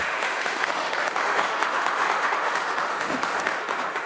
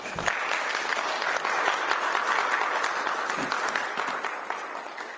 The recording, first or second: second